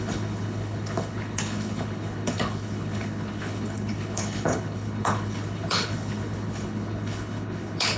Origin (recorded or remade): remade